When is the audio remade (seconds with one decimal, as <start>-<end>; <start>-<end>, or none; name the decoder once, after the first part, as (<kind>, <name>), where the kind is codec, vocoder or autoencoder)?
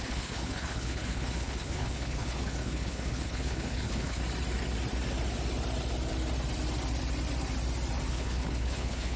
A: 0.0-4.2 (codec, HILCodec); 8.1-9.2